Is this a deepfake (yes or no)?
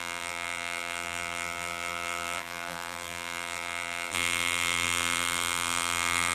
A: yes